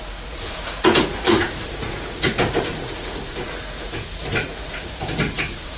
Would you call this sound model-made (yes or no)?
yes